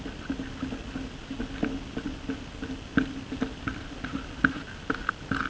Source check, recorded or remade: recorded